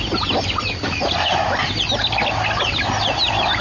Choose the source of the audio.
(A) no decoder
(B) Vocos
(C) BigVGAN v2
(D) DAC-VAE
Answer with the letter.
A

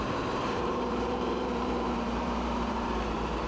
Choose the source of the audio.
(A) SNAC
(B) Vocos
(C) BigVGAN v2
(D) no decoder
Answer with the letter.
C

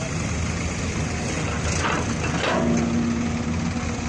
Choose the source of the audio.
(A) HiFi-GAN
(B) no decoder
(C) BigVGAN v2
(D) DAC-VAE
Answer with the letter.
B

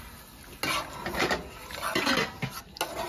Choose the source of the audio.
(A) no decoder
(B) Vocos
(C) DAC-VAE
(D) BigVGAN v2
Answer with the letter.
A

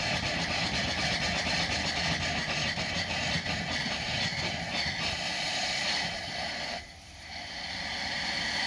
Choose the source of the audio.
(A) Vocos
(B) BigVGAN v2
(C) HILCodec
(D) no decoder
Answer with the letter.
B